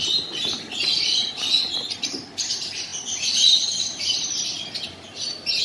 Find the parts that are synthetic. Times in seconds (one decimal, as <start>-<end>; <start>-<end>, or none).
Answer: none